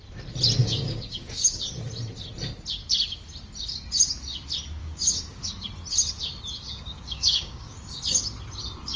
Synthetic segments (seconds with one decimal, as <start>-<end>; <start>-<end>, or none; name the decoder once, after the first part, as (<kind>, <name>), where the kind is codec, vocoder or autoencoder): 0.6-1.7 (codec, DAC); 4.8-5.5; 6.6-8.0